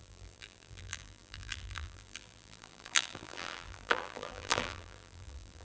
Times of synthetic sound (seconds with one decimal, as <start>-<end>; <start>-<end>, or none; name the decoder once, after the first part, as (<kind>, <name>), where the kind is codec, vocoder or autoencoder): 0.0-5.6 (vocoder, BigVGAN v2)